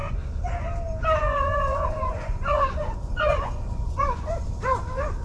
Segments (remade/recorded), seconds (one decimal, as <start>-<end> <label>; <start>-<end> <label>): 0.0-0.5 remade; 0.5-1.2 recorded; 1.2-4.3 remade; 4.3-5.2 recorded